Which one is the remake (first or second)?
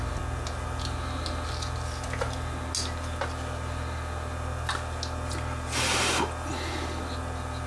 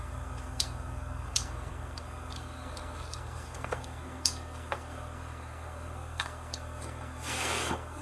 second